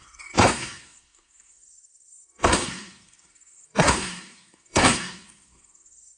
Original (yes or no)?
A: no